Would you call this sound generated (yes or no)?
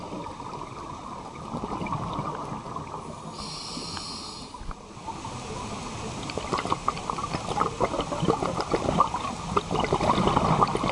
no